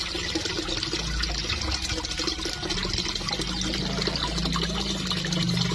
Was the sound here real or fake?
real